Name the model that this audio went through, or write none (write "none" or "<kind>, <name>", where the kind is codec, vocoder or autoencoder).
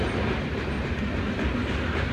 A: none